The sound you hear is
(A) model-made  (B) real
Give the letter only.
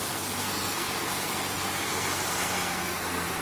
A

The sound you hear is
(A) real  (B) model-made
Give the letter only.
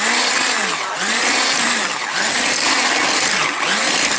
A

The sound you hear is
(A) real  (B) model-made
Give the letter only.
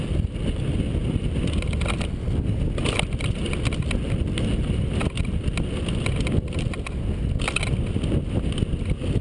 A